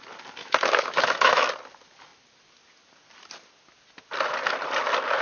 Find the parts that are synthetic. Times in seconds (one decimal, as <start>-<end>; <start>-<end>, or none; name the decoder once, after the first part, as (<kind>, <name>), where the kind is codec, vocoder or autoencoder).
0.4-1.5 (autoencoder, DAC-VAE)